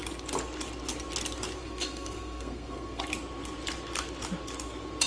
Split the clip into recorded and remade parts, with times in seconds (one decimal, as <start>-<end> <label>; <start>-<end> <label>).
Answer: 0.0-1.6 recorded; 1.6-3.0 remade; 3.0-5.1 recorded